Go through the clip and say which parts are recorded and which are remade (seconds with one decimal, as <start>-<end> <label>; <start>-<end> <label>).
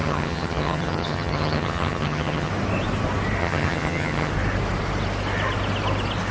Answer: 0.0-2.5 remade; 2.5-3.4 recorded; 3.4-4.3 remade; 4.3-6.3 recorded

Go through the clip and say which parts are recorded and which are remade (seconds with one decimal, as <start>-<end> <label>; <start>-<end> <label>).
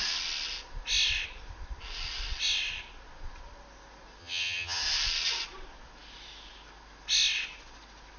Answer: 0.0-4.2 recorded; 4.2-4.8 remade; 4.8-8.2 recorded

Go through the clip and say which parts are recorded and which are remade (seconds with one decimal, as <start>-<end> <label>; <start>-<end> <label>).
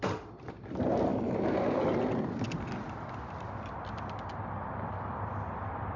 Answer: 0.0-6.0 recorded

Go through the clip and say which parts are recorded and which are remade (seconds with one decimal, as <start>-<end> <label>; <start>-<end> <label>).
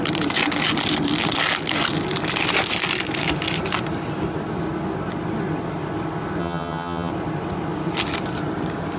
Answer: 0.0-6.4 recorded; 6.4-7.1 remade; 7.1-9.0 recorded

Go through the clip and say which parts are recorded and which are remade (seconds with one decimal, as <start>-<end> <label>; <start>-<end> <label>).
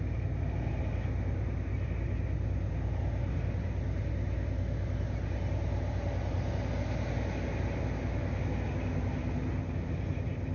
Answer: 0.0-10.5 recorded